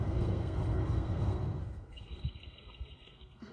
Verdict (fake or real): fake